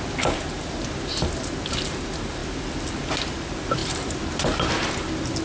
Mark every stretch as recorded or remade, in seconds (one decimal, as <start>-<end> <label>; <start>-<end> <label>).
0.0-5.4 recorded